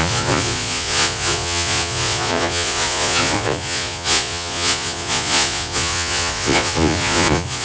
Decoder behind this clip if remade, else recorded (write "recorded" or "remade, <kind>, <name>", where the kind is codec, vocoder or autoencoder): remade, vocoder, Vocos